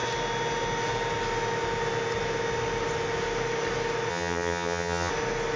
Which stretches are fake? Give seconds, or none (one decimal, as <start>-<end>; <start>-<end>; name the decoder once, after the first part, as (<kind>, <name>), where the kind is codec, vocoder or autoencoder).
4.1-5.1 (vocoder, HiFi-GAN)